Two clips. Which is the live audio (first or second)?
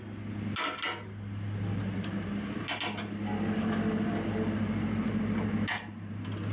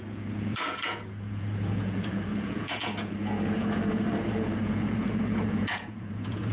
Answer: first